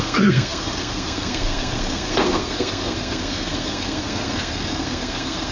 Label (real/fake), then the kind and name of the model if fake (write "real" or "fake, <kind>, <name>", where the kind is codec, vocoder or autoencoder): fake, codec, SNAC